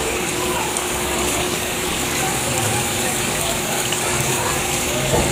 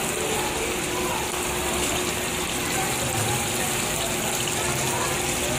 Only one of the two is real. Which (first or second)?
second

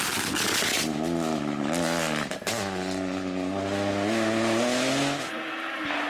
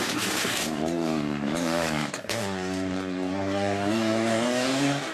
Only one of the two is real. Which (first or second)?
first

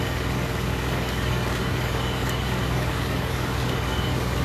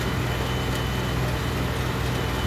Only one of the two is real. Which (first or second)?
second